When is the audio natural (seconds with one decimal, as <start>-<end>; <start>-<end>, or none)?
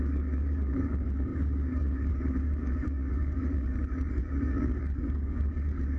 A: none